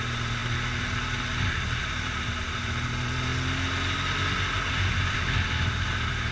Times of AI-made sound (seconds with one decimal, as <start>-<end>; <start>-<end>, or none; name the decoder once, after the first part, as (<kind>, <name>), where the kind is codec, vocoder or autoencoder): 0.0-0.4 (vocoder, BigVGAN v2); 1.8-3.3; 4.7-6.3